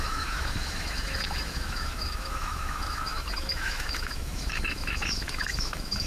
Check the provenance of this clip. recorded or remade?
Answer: remade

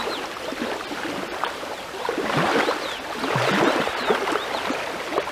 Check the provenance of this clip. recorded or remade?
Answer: recorded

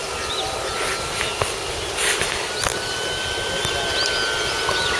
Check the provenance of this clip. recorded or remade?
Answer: recorded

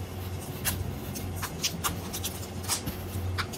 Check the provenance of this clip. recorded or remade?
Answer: recorded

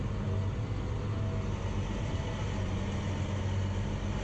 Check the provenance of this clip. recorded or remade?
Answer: recorded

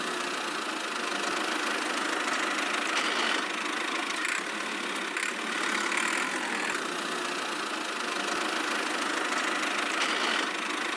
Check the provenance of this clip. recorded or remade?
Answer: recorded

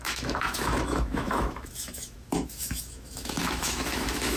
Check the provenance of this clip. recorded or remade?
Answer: remade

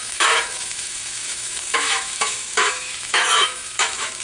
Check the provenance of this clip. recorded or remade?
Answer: remade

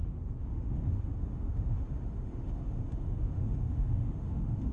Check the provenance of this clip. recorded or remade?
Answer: remade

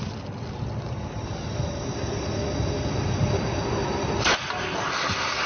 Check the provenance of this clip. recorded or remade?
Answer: recorded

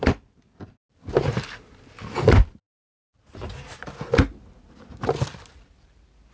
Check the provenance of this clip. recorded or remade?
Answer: recorded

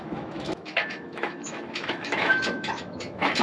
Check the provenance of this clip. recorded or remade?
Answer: remade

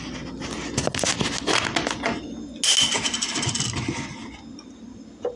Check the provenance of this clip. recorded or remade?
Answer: recorded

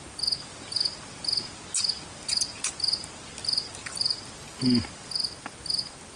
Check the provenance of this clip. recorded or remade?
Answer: recorded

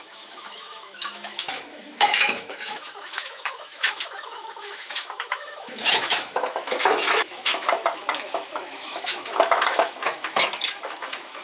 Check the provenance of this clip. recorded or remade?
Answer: remade